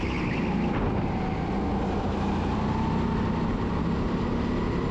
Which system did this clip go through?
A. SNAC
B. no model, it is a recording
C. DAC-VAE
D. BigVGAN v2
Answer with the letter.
B